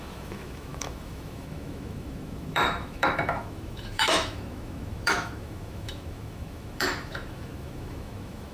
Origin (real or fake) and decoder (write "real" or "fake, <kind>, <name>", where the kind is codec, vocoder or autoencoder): fake, autoencoder, DAC-VAE